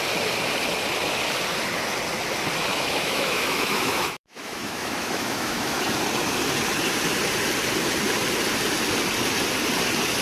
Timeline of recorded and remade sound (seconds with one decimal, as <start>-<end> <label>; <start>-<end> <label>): 0.0-2.7 recorded; 2.7-5.8 remade; 5.8-10.2 recorded